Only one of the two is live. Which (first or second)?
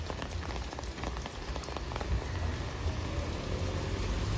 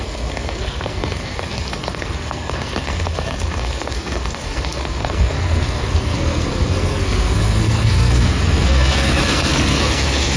first